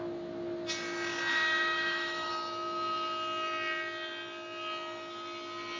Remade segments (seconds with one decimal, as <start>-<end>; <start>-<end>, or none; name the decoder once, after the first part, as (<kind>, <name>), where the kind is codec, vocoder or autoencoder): 1.3-2.3 (autoencoder, DAC-VAE)